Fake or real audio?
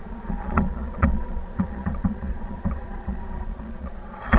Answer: fake